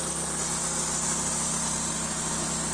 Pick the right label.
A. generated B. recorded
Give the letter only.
B